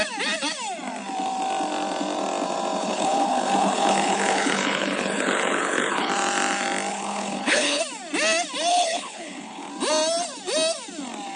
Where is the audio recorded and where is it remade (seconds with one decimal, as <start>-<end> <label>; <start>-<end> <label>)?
0.0-2.8 recorded; 2.8-6.1 remade; 6.1-6.9 recorded; 6.9-7.8 remade; 7.8-8.7 recorded; 8.7-9.7 remade; 9.7-11.4 recorded